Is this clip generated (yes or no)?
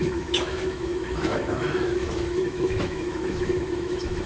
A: yes